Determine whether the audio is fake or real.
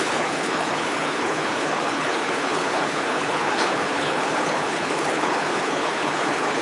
fake